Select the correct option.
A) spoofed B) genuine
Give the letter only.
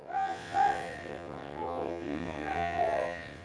A